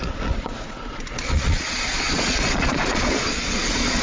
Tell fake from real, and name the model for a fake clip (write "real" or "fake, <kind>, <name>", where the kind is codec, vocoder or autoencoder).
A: fake, vocoder, Vocos